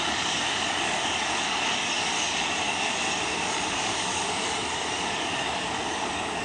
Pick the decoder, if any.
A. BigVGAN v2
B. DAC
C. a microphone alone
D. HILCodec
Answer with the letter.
B